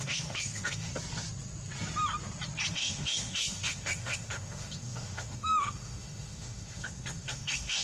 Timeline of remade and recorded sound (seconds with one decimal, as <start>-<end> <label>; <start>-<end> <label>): 0.0-0.9 remade; 0.9-2.7 recorded; 2.7-7.8 remade